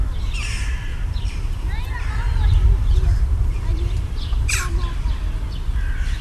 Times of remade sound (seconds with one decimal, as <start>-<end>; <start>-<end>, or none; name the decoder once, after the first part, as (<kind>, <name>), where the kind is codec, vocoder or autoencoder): 0.9-4.6 (vocoder, BigVGAN v2)